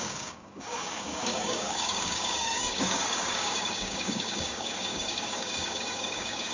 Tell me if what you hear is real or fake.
fake